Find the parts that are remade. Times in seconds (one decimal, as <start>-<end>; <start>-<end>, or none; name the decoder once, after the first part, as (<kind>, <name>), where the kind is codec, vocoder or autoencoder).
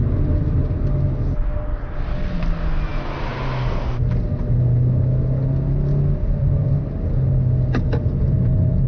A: none